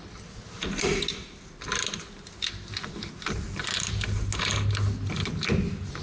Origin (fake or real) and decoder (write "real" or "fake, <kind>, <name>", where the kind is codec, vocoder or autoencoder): real